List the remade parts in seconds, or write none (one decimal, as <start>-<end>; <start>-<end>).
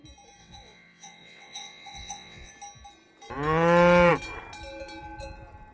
0.4-2.5